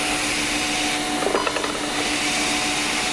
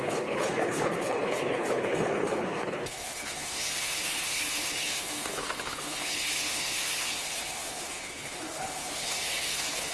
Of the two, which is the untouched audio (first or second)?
first